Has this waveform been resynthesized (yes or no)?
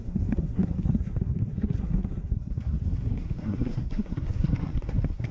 yes